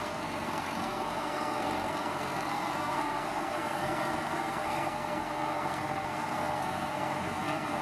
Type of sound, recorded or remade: remade